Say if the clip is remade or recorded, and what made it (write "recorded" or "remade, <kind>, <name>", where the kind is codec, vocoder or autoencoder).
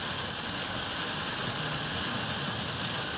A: recorded